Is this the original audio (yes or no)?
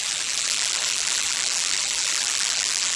no